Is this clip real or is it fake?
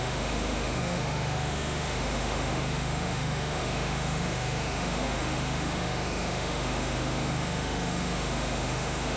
fake